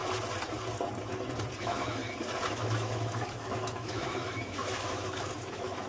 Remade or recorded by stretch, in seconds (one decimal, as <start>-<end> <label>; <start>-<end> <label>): 0.0-1.6 recorded; 1.6-2.0 remade; 2.0-2.5 recorded; 2.5-5.9 remade